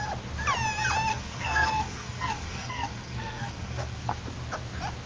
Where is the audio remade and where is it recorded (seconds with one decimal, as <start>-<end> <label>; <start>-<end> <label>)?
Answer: 0.0-1.1 recorded; 1.1-4.2 remade; 4.2-5.1 recorded